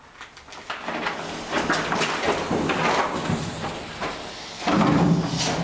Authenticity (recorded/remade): recorded